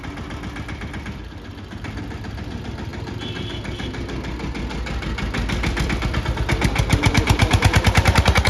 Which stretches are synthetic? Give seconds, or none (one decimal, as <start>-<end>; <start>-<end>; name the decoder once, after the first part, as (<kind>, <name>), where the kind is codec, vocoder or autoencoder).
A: none